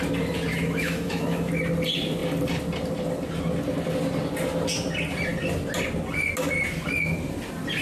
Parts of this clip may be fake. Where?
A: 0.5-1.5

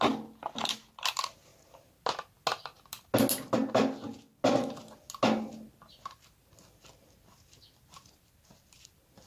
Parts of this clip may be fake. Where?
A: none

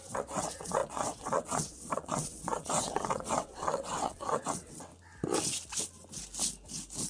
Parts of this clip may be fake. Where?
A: 0.0-4.9

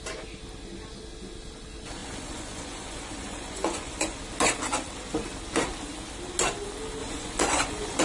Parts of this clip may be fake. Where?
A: 2.0-4.2; 7.0-8.0

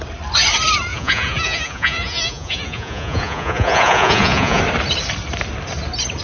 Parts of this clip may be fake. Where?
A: 0.9-4.6

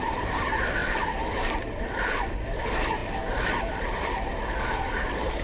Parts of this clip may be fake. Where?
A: none

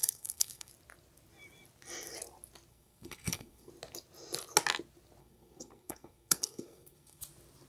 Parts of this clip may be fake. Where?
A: 0.0-0.7; 2.7-3.7; 5.2-7.2